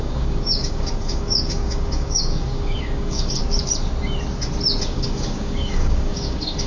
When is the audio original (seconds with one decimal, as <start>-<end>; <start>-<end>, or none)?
3.4-4.9